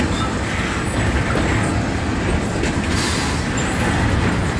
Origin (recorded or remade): recorded